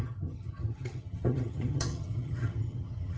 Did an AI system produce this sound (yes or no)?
yes